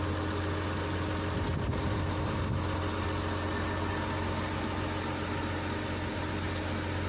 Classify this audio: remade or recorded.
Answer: recorded